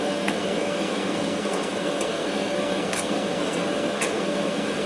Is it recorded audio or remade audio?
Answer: remade